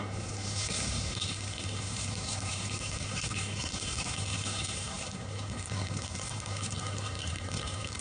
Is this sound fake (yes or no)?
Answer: yes